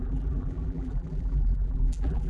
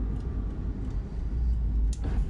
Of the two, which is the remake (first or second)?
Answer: first